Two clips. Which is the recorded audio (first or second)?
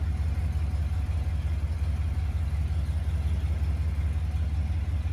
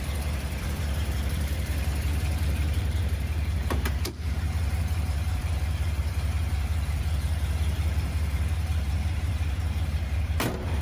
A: first